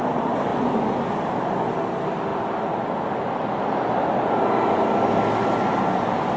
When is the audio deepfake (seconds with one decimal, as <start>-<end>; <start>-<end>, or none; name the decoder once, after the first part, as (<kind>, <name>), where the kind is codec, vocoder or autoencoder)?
none